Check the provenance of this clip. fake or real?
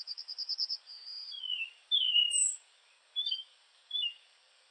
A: fake